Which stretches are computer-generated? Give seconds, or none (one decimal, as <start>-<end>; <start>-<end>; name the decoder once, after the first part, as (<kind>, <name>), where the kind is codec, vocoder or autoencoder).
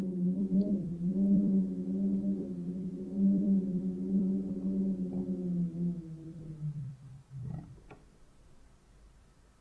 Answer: 0.0-1.7 (vocoder, BigVGAN v2); 2.4-4.3; 6.0-9.6